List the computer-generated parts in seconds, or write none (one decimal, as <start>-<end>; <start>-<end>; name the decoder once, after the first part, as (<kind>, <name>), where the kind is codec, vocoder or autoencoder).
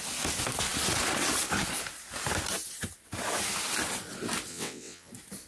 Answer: 4.5-5.1 (vocoder, WaveNeXt)